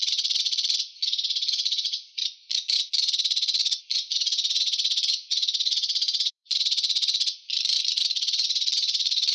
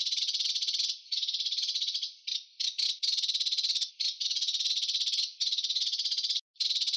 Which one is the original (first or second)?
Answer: second